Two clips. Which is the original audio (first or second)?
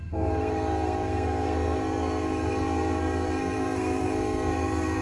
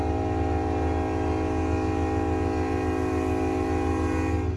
second